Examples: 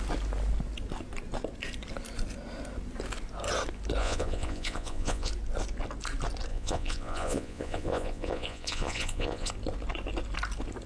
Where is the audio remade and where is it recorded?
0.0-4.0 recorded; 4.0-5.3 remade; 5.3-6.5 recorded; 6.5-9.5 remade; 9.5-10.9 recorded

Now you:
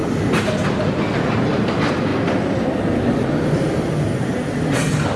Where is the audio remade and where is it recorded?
0.0-5.2 recorded

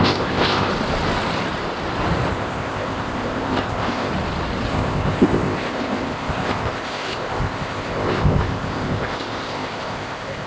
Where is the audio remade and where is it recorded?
0.0-0.7 remade; 0.7-2.3 recorded; 2.3-4.1 remade; 4.1-4.7 recorded; 4.7-10.5 remade

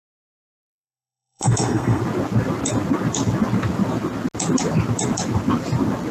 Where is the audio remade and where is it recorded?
0.0-2.0 remade; 2.0-6.1 recorded

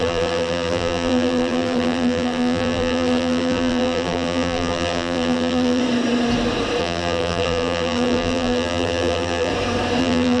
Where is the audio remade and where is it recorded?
0.0-5.8 remade; 5.8-6.8 recorded; 6.8-9.5 remade; 9.5-10.0 recorded; 10.0-10.4 remade

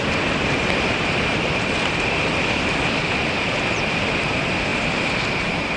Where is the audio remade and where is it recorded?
0.0-5.8 recorded

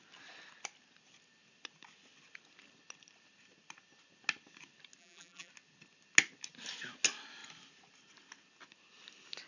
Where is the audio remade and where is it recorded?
0.0-5.0 recorded; 5.0-5.5 remade; 5.5-9.5 recorded